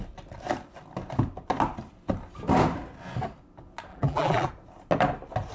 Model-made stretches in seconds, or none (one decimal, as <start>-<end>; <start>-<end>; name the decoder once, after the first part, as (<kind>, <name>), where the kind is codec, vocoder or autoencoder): 3.9-4.5 (vocoder, BigVGAN v2)